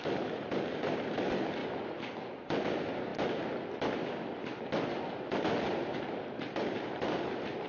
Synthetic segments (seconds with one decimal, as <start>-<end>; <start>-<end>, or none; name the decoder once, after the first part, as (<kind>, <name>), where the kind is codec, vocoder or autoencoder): 0.0-1.6 (vocoder, BigVGAN v2); 2.6-3.1; 5.6-7.7